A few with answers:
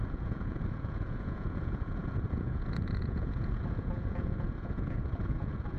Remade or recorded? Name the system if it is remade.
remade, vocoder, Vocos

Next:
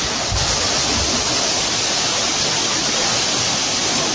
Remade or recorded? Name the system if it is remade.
recorded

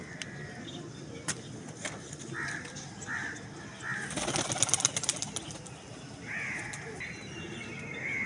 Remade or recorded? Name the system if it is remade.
recorded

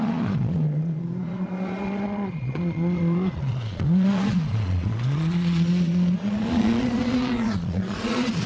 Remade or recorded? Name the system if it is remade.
remade, vocoder, Vocos